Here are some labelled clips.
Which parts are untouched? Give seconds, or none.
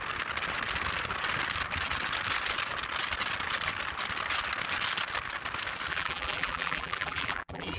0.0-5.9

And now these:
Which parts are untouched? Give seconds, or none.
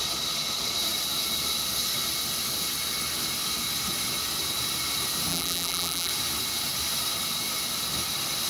0.0-5.3; 6.1-8.5